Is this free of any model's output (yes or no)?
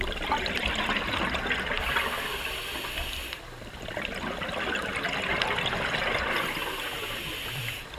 yes